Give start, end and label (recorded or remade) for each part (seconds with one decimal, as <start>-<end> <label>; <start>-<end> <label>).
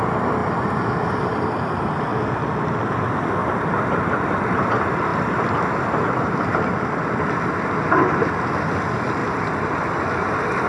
0.0-0.4 recorded; 0.4-1.5 remade; 1.5-3.4 recorded; 3.4-4.0 remade; 4.0-9.2 recorded; 9.2-9.9 remade; 9.9-10.7 recorded